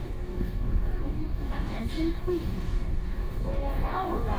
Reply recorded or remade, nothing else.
remade